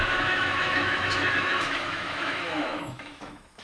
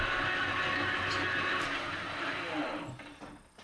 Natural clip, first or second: second